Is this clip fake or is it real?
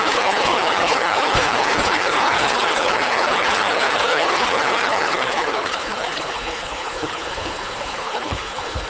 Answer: fake